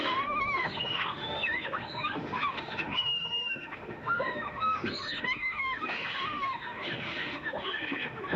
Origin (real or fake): fake